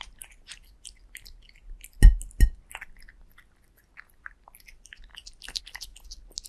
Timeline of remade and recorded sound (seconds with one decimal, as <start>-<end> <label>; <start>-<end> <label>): 0.0-6.5 recorded